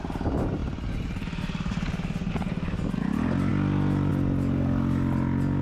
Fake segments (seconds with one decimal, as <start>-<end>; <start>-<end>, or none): none